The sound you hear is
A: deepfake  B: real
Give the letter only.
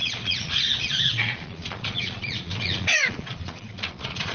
A